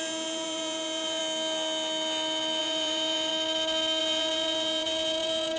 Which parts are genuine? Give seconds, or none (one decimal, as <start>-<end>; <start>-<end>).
1.2-2.6; 3.3-4.0